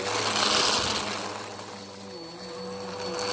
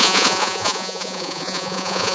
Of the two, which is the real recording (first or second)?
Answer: first